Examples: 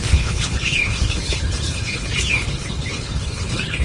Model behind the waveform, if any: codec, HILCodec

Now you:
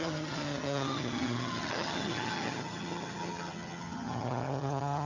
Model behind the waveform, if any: vocoder, HiFi-GAN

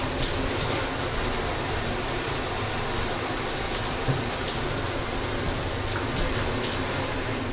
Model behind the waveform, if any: none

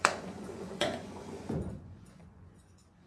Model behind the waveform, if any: vocoder, Vocos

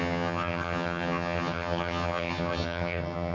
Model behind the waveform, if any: vocoder, HiFi-GAN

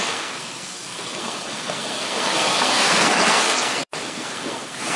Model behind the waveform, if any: codec, SNAC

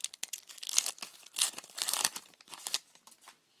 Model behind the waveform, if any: none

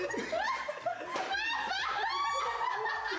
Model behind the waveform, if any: none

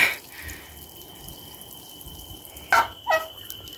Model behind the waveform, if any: none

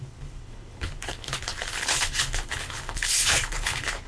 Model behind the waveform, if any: codec, HILCodec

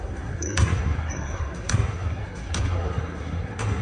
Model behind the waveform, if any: codec, SNAC